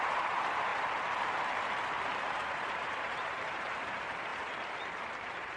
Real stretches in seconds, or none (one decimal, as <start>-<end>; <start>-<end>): 0.7-1.5